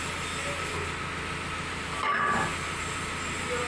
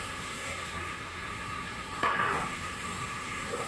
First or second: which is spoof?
second